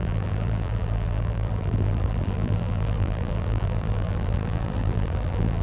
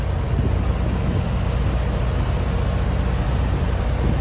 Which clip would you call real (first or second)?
second